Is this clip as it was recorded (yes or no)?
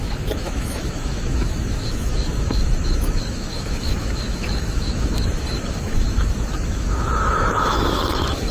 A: no